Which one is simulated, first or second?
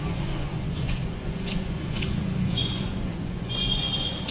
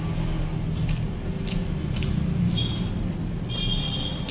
first